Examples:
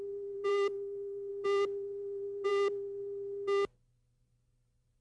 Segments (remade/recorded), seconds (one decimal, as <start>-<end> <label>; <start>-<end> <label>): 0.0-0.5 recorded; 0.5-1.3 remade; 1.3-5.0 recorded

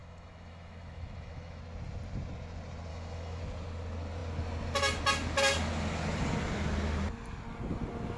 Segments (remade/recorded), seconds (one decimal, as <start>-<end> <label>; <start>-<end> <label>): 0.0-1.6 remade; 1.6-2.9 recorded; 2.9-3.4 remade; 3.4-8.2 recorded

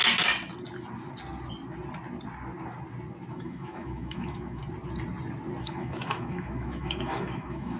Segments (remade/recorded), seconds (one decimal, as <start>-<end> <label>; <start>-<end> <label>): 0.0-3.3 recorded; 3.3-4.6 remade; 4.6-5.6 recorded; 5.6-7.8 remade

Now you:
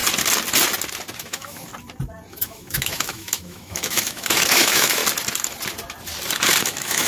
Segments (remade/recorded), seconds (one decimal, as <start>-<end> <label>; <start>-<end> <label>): 0.0-1.2 recorded; 1.2-1.7 remade; 1.7-2.3 recorded; 2.3-5.0 remade; 5.0-6.6 recorded; 6.6-7.1 remade

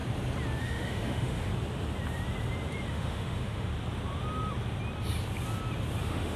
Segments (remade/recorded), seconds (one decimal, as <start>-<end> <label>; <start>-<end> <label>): 0.0-0.6 recorded; 0.6-1.5 remade; 1.5-2.9 recorded; 2.9-3.7 remade; 3.7-6.0 recorded; 6.0-6.4 remade

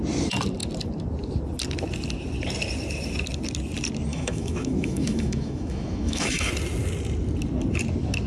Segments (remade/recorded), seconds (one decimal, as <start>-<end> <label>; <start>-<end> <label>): 0.0-4.1 recorded; 4.1-6.5 remade; 6.5-8.3 recorded

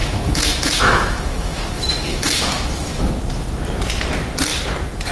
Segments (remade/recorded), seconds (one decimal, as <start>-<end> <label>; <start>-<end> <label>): 0.0-3.1 remade; 3.1-5.1 recorded